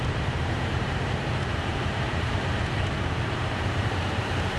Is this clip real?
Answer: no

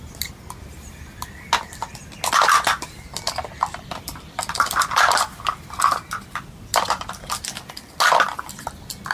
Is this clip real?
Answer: yes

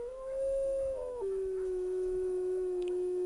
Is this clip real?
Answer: no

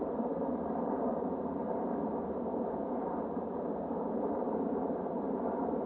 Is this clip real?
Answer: no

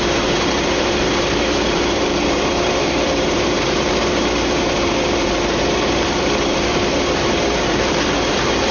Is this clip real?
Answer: no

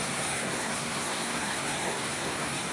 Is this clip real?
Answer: no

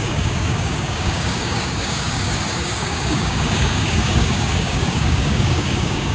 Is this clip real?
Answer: no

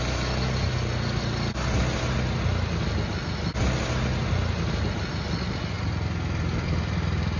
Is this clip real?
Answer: yes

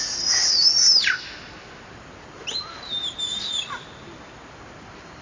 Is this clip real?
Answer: yes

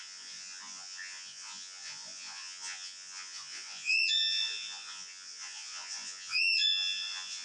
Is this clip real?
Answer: no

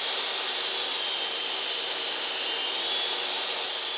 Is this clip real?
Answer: yes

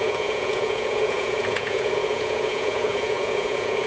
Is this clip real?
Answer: no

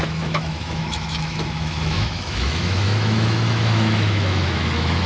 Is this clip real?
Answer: no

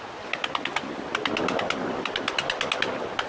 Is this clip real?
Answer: yes